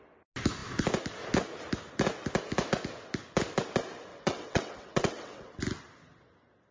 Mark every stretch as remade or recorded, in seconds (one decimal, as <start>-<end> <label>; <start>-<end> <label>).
0.0-4.1 recorded; 4.1-5.6 remade; 5.6-6.7 recorded